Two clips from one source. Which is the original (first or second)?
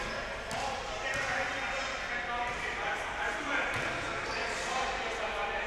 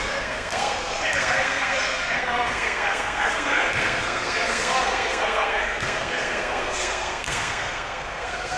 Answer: first